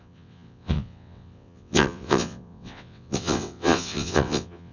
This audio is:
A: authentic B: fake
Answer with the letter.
B